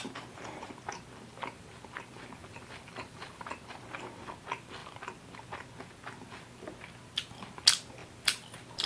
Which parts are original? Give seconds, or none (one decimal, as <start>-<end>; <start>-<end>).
0.0-1.3; 1.8-2.4; 3.5-8.0